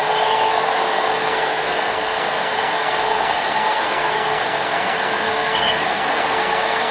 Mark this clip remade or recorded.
remade